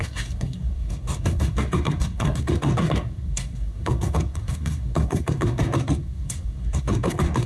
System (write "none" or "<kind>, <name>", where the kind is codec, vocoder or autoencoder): codec, SNAC